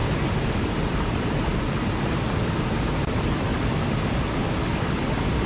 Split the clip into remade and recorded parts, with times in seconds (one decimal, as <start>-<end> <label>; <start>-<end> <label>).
0.0-5.5 recorded